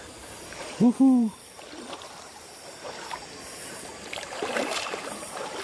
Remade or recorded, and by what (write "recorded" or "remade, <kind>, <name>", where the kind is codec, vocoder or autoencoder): remade, vocoder, BigVGAN v2